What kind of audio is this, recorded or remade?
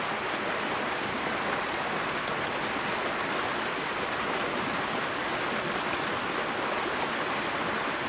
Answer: recorded